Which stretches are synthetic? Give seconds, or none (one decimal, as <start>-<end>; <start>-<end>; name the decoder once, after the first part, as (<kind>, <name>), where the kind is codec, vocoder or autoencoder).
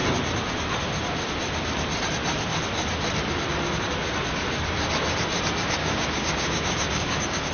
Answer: 5.8-7.5 (codec, DAC)